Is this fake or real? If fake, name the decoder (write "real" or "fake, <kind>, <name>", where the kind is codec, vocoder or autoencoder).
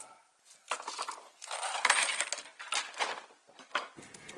real